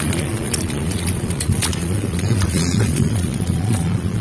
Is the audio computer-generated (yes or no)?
yes